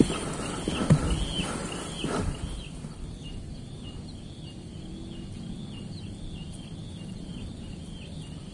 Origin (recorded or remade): recorded